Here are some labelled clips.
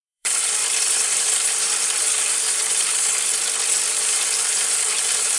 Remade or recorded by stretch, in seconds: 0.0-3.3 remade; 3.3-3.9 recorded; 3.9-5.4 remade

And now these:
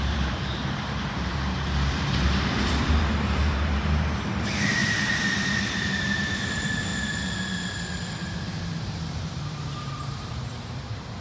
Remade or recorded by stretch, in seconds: 0.0-4.8 remade; 4.8-5.3 recorded; 5.3-6.9 remade; 6.9-8.8 recorded; 8.8-11.2 remade

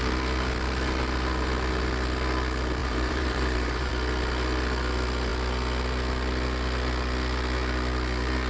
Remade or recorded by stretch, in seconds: 0.0-2.8 recorded; 2.8-3.9 remade; 3.9-8.5 recorded

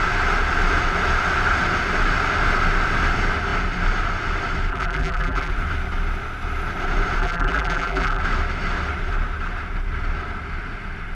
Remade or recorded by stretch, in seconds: 0.0-4.7 recorded; 4.7-5.5 remade; 5.5-7.2 recorded; 7.2-8.2 remade; 8.2-11.1 recorded

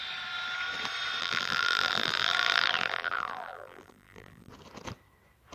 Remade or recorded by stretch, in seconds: 0.0-1.2 recorded; 1.2-4.5 remade; 4.5-5.5 recorded

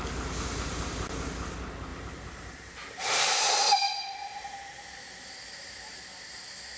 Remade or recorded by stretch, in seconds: 0.0-1.9 recorded; 1.9-6.0 remade; 6.0-6.8 recorded